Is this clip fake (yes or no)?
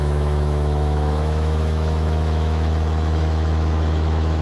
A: yes